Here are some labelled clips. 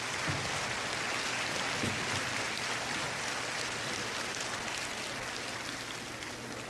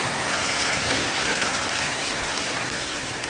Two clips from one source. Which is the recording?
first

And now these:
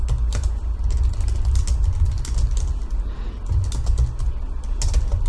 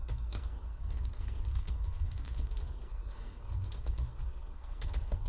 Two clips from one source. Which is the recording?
first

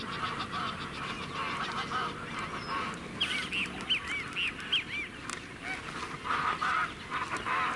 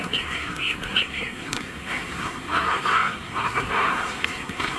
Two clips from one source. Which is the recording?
first